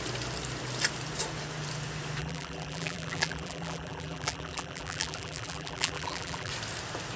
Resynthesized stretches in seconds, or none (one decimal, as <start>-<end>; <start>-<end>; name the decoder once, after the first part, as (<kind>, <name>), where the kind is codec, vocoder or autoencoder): 2.2-6.5 (vocoder, BigVGAN v2)